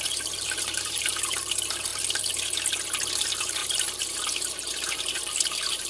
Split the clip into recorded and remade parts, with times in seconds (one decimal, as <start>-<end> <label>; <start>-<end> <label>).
0.0-1.9 remade; 1.9-3.2 recorded; 3.2-5.9 remade